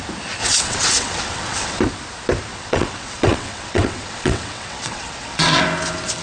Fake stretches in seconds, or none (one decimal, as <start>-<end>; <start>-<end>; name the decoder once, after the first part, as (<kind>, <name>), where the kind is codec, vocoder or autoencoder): 0.4-1.8 (vocoder, WaveNeXt); 2.5-5.6